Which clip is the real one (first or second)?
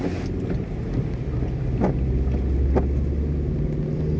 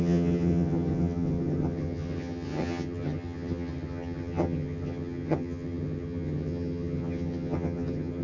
first